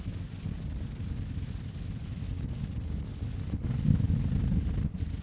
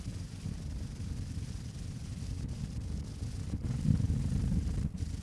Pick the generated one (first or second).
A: second